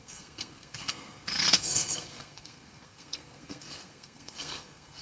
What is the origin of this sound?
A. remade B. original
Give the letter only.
A